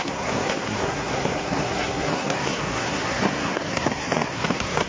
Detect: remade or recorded remade